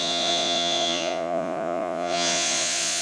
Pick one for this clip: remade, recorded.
remade